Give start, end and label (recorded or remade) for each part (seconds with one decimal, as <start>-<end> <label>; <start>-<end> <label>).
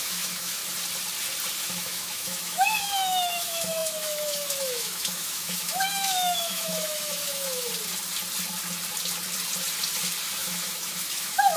0.0-0.6 remade; 0.6-1.6 recorded; 1.6-7.7 remade; 7.7-10.3 recorded; 10.3-11.6 remade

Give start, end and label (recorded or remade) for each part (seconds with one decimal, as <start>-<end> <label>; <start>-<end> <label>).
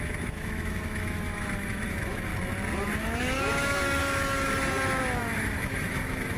0.0-2.3 remade; 2.3-3.2 recorded; 3.2-4.0 remade; 4.0-5.2 recorded; 5.2-6.4 remade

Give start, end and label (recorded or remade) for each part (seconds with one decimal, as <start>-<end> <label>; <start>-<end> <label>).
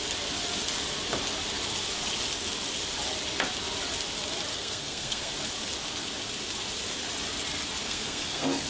0.0-4.5 recorded; 4.5-5.3 remade; 5.3-7.8 recorded; 7.8-8.7 remade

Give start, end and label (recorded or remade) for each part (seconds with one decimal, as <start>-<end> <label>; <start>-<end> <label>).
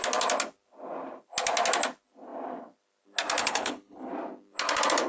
0.0-3.4 recorded; 3.4-4.1 remade; 4.1-5.1 recorded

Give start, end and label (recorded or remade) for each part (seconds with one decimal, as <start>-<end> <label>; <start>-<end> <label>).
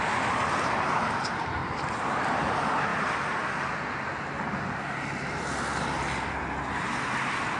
0.0-2.9 remade; 2.9-6.0 recorded; 6.0-7.6 remade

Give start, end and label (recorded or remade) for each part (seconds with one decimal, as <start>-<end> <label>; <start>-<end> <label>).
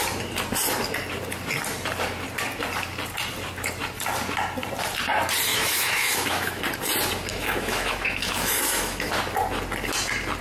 0.0-5.5 recorded; 5.5-6.6 remade; 6.6-7.3 recorded; 7.3-9.1 remade; 9.1-10.4 recorded